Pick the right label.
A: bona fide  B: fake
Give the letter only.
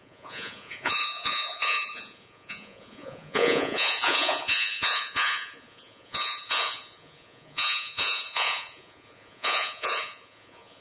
B